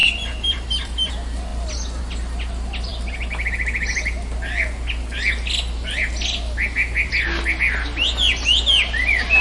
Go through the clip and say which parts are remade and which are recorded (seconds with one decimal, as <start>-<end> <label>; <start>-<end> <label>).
0.0-1.1 remade; 1.1-9.4 recorded

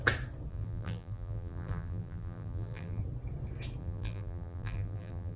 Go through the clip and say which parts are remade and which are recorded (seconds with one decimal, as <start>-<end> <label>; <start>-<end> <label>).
0.0-0.5 recorded; 0.5-3.0 remade; 3.0-3.8 recorded; 3.8-5.4 remade

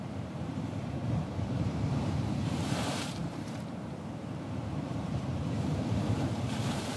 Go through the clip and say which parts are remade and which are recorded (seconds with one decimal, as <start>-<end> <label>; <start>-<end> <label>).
0.0-7.0 remade

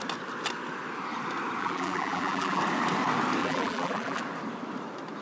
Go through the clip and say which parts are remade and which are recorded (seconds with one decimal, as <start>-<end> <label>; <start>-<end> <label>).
0.0-1.6 recorded; 1.6-2.6 remade; 2.6-3.4 recorded; 3.4-4.2 remade; 4.2-5.2 recorded

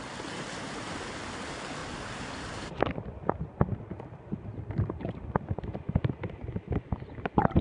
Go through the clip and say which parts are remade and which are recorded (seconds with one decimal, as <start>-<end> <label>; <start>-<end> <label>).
0.0-1.8 recorded; 1.8-2.7 remade; 2.7-7.6 recorded

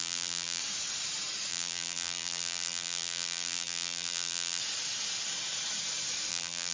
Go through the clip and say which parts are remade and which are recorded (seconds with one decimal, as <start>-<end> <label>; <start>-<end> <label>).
0.0-0.6 remade; 0.6-1.5 recorded; 1.5-4.6 remade; 4.6-6.3 recorded; 6.3-6.7 remade

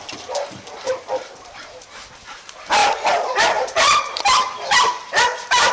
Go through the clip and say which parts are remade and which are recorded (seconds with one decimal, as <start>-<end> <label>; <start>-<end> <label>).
0.0-2.8 recorded; 2.8-5.7 remade